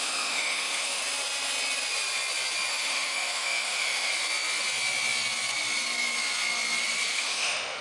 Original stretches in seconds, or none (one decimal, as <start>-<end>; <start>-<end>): 1.0-2.7; 4.1-7.1